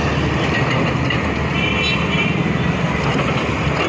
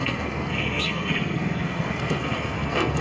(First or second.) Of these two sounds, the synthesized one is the second